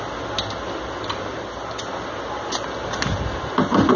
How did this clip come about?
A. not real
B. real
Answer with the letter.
B